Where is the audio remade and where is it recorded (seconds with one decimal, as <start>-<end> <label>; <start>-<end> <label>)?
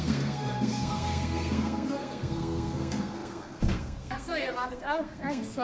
0.0-5.6 remade